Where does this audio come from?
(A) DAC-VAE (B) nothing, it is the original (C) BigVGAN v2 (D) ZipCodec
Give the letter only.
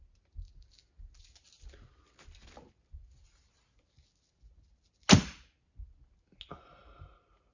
B